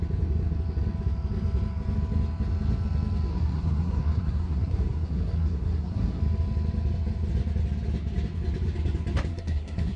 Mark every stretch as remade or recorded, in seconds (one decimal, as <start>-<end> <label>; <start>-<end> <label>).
0.0-3.3 recorded; 3.3-6.2 remade; 6.2-9.3 recorded; 9.3-10.0 remade